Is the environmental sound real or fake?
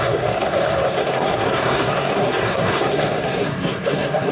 fake